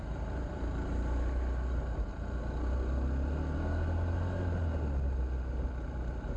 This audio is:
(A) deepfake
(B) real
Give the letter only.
B